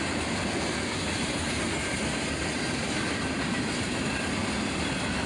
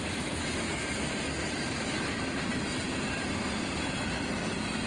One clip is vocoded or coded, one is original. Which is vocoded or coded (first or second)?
first